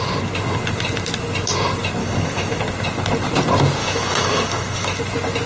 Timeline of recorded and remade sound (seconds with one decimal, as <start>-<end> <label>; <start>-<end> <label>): 0.0-2.0 recorded; 2.0-2.6 remade; 2.6-3.8 recorded; 3.8-5.0 remade; 5.0-5.5 recorded